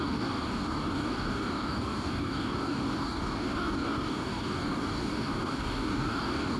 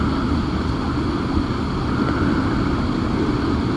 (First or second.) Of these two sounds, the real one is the second